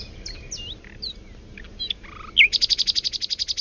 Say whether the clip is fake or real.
real